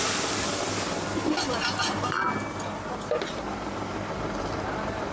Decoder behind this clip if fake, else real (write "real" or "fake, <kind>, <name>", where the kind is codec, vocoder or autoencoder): real